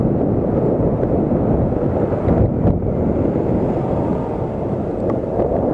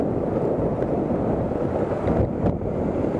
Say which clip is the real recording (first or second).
first